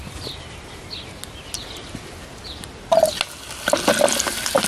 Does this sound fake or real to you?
real